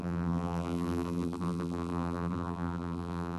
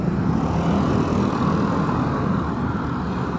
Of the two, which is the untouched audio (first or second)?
second